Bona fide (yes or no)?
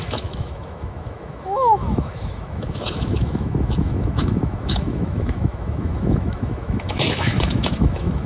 no